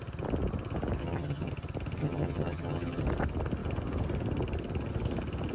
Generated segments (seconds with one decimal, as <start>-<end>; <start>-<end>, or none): 1.0-1.5; 2.0-3.0